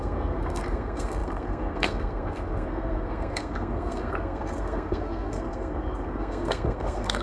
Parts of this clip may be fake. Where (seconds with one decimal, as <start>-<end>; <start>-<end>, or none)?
0.0-7.2